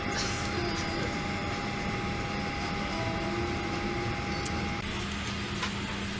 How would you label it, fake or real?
real